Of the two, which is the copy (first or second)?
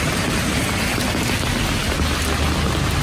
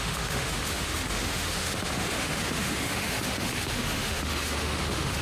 second